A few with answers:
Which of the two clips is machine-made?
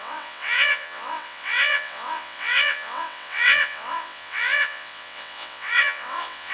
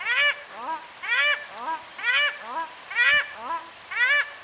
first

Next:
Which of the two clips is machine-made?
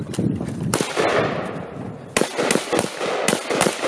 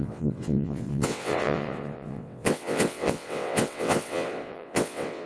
second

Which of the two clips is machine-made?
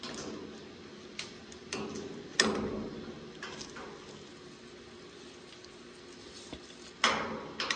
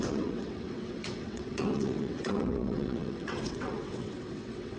second